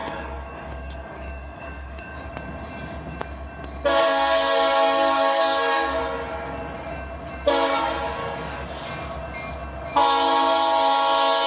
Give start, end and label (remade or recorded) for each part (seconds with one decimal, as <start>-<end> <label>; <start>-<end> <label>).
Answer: 0.0-2.3 remade; 2.3-4.1 recorded; 4.1-6.0 remade; 6.0-8.2 recorded; 8.2-8.9 remade; 8.9-11.5 recorded